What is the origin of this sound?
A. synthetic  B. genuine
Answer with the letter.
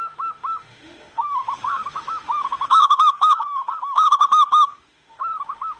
A